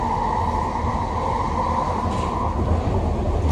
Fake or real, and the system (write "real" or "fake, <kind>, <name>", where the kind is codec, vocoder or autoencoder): real